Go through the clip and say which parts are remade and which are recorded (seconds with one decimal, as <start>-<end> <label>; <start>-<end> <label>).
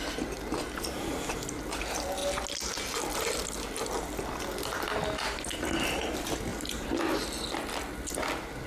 0.0-8.7 recorded